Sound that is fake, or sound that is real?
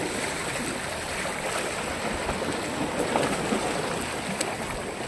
real